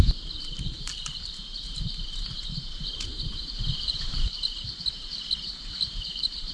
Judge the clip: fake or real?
fake